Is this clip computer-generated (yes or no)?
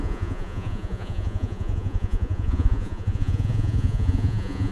yes